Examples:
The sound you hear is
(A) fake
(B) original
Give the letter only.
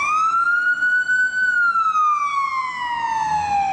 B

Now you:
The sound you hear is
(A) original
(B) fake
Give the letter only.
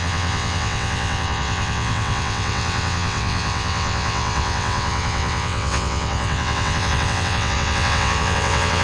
B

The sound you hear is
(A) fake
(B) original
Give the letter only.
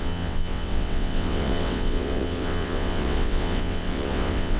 A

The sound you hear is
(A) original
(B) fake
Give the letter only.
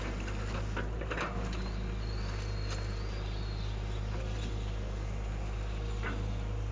A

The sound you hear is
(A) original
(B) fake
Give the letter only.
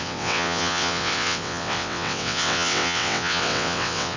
B